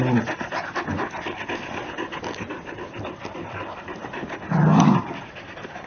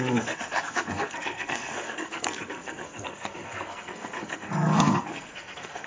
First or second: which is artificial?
second